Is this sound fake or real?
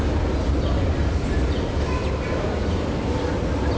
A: real